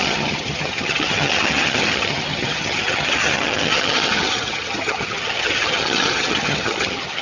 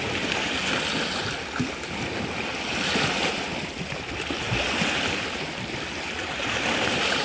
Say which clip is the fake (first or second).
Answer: first